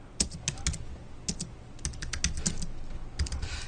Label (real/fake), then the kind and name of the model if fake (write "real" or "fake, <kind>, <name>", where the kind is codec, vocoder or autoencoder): real